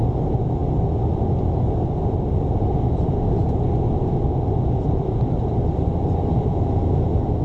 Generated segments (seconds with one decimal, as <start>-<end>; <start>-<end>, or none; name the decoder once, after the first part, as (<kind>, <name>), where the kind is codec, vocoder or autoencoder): none